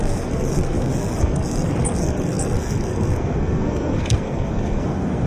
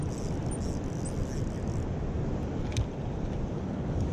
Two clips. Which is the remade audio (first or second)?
first